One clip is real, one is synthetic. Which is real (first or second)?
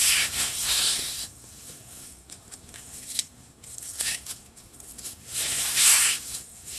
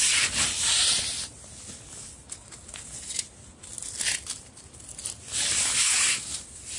second